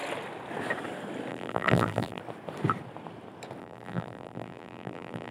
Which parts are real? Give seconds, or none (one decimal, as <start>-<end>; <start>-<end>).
0.0-1.3; 2.2-3.6

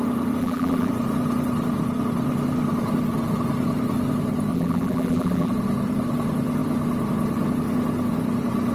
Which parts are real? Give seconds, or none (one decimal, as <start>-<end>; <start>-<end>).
0.0-0.4; 0.9-4.5; 5.5-8.7

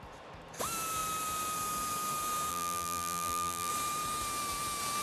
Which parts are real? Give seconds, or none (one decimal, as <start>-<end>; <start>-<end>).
0.0-2.5; 3.7-5.0